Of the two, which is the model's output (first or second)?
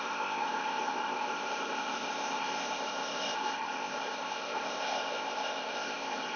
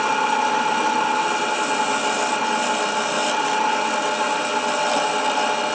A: first